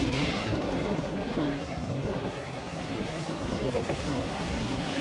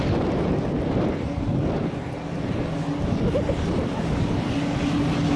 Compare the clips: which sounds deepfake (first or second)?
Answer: first